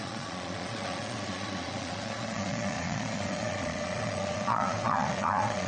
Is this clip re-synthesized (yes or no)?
yes